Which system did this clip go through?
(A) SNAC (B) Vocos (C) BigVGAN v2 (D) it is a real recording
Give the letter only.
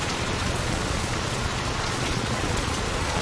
B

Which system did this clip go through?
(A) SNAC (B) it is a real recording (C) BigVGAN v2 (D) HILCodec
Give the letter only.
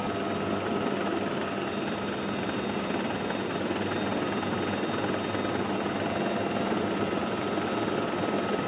B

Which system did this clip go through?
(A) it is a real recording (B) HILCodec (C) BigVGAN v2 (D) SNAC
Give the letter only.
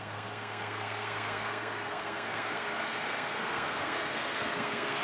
D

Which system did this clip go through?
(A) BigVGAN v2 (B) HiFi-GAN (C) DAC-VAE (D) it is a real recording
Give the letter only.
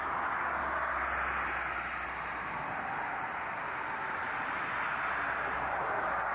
D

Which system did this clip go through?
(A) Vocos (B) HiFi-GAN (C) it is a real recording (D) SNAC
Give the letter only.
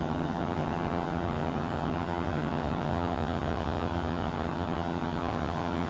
B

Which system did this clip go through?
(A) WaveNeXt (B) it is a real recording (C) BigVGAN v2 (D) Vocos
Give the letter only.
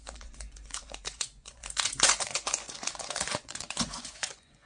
D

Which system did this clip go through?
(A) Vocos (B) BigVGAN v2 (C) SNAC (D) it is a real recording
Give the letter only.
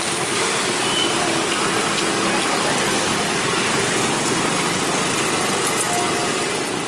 D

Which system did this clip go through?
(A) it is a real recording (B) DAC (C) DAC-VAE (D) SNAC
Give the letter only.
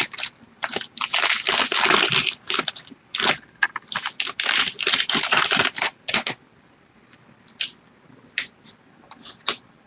A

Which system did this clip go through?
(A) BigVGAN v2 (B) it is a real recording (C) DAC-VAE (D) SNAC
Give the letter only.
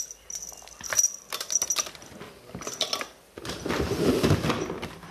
B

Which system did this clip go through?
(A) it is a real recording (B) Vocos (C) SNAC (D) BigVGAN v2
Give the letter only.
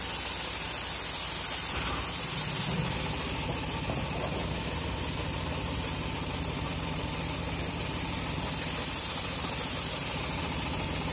A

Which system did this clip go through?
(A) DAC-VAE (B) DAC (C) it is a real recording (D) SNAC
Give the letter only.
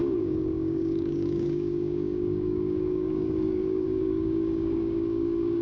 B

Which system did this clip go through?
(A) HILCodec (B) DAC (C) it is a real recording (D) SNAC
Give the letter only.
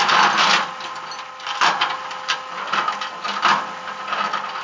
C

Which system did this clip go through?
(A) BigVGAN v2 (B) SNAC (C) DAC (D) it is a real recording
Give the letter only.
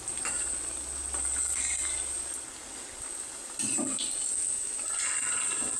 D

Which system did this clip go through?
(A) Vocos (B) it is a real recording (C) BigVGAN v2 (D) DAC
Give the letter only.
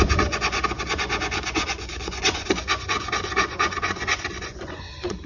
A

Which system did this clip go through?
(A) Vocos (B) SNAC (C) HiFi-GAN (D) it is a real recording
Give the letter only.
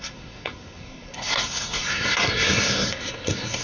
B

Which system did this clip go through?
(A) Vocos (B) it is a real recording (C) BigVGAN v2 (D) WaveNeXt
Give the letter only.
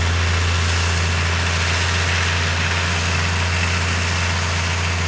B